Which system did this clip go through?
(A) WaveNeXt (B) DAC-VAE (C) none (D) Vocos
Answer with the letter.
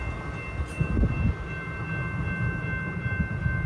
C